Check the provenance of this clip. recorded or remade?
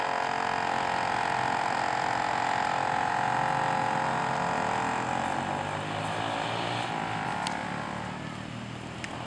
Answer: recorded